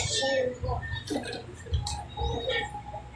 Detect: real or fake real